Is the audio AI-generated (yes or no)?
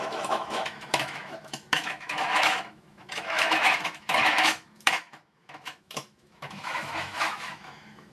yes